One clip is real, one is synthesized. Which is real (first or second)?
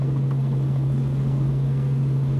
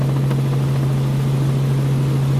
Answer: second